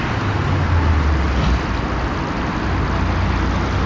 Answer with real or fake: real